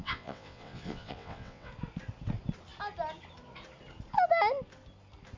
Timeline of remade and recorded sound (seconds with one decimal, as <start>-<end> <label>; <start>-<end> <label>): 0.0-1.7 remade; 1.7-5.4 recorded